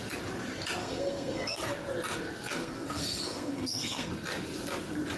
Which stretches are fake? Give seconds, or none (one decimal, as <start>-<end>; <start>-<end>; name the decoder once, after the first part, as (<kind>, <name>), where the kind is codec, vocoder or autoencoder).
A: 0.8-1.6 (codec, SNAC); 2.5-4.1